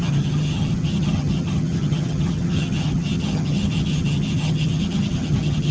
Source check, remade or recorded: remade